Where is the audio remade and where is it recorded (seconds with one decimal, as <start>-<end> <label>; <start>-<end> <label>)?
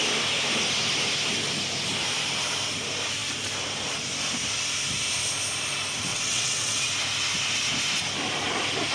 0.0-6.1 recorded; 6.1-6.9 remade; 6.9-8.9 recorded